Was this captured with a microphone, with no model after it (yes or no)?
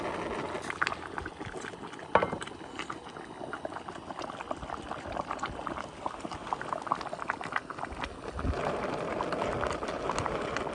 yes